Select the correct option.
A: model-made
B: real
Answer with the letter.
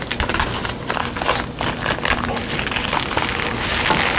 B